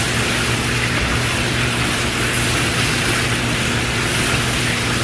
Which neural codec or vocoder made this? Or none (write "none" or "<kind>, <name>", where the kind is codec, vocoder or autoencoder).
none